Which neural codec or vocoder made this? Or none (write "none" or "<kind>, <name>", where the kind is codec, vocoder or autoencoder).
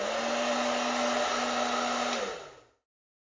none